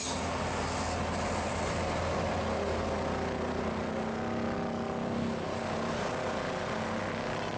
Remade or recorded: recorded